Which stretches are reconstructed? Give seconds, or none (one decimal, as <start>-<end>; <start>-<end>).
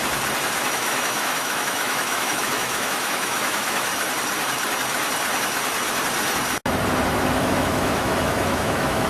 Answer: 0.6-3.9; 7.4-9.1